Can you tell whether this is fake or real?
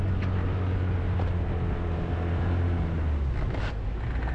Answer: real